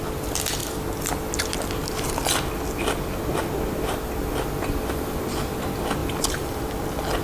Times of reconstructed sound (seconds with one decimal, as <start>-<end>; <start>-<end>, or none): 6.0-6.6